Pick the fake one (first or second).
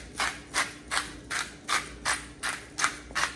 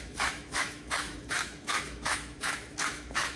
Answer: second